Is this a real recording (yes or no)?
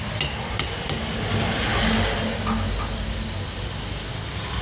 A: yes